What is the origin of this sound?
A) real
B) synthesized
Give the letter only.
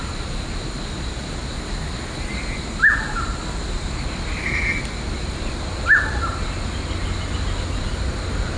A